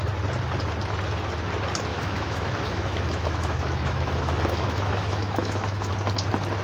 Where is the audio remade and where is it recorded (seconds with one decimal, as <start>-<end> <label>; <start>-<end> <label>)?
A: 0.0-1.9 recorded; 1.9-5.9 remade; 5.9-6.6 recorded